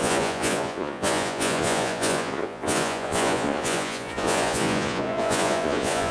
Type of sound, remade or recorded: remade